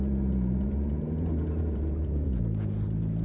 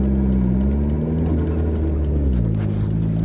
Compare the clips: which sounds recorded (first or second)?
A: second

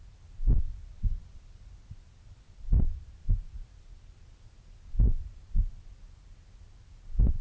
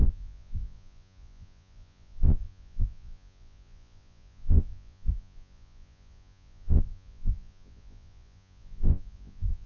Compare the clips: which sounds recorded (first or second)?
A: first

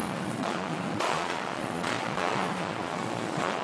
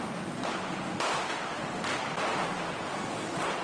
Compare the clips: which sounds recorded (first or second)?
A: second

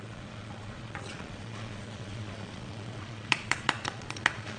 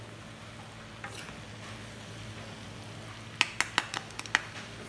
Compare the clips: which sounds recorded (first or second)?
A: second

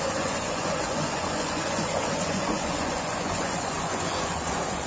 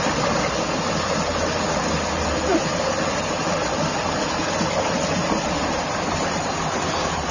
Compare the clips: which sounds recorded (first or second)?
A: second